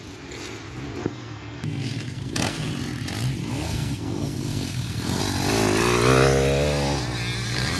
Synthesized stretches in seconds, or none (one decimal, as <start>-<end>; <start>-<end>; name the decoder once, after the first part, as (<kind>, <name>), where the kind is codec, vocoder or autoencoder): 1.0-2.7 (codec, SNAC); 3.4-5.2